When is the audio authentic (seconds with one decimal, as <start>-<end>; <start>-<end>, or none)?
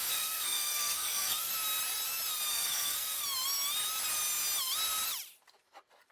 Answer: 1.5-2.5; 3.2-6.1